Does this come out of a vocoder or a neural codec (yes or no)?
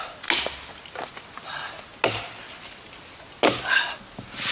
no